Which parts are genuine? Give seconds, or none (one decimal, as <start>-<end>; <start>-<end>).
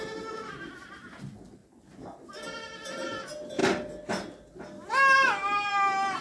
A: 0.0-6.2